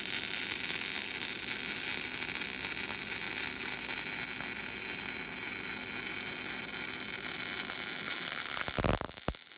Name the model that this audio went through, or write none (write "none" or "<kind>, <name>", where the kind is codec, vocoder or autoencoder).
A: none